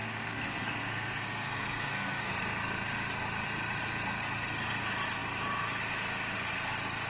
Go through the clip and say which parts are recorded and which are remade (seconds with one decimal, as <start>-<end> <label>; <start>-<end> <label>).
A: 0.0-2.3 remade; 2.3-7.1 recorded